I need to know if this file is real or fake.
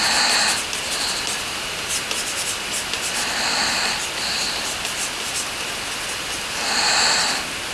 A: real